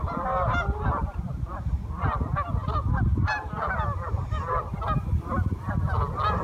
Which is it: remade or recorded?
recorded